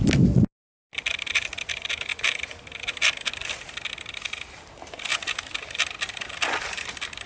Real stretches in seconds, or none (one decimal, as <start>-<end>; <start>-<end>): 0.0-7.3

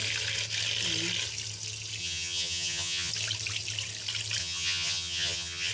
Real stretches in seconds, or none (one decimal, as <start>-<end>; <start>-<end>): 0.0-2.0; 3.1-4.4

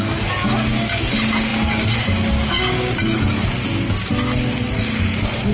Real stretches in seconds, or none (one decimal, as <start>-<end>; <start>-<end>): 0.0-5.5

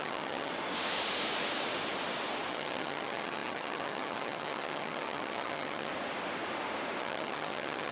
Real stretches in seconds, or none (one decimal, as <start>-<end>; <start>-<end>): 0.5-2.5; 5.9-7.0